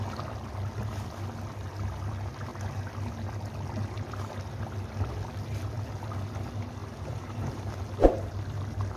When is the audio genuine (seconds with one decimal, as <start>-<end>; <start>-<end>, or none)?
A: 0.0-6.8; 7.8-9.0